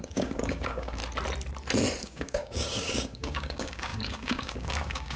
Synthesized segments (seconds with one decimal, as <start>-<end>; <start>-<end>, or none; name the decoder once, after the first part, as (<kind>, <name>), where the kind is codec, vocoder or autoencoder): 0.0-1.0 (codec, DAC); 2.0-5.2